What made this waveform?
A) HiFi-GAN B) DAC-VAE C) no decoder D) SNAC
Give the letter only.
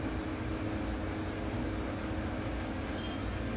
C